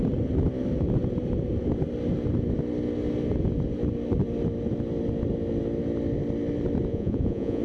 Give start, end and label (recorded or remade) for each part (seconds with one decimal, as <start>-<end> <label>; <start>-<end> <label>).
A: 0.0-6.9 recorded; 6.9-7.6 remade